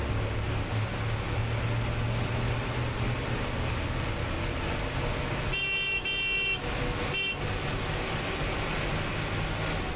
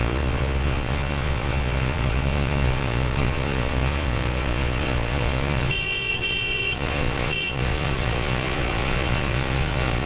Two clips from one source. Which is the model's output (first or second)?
second